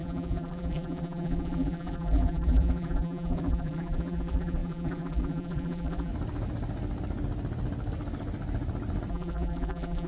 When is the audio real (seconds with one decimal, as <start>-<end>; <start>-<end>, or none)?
6.1-9.1